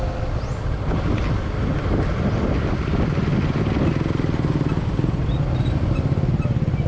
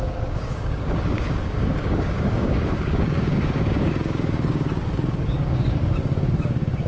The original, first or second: first